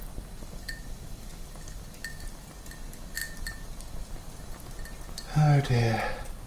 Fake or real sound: real